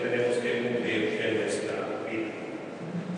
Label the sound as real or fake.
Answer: real